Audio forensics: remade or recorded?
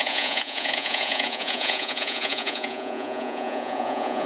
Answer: remade